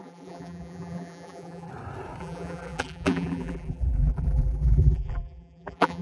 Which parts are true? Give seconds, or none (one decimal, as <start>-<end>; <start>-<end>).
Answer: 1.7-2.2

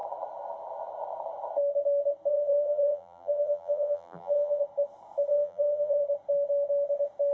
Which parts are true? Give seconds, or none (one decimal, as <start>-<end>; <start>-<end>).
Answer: 0.0-2.3; 4.6-5.3; 6.0-7.3

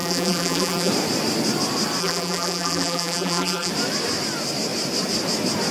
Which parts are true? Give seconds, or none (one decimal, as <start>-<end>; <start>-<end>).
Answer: 0.9-2.0; 3.7-5.7

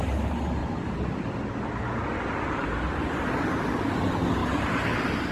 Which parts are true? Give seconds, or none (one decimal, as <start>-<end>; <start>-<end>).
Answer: 0.0-0.6; 3.6-4.4